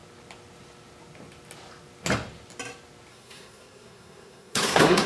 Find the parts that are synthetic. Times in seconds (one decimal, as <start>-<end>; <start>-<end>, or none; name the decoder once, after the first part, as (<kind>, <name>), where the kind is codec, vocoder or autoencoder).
3.1-5.1 (codec, SNAC)